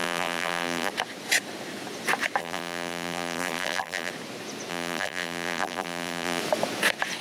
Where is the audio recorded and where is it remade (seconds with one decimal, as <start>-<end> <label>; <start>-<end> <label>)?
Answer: 0.0-0.9 remade; 0.9-2.4 recorded; 2.4-4.1 remade; 4.1-4.7 recorded; 4.7-6.4 remade; 6.4-7.2 recorded